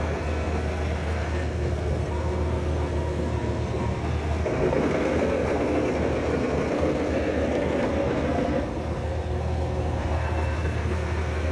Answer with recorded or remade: remade